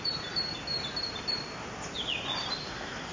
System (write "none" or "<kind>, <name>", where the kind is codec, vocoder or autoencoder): vocoder, BigVGAN v2